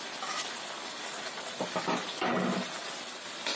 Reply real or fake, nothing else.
real